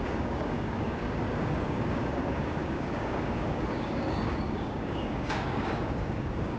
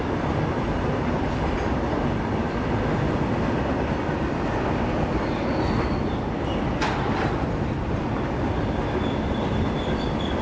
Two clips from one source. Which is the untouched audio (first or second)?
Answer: second